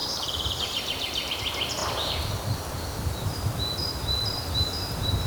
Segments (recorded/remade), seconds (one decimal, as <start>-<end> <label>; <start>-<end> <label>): 0.0-1.3 remade; 1.3-1.8 recorded; 1.8-5.3 remade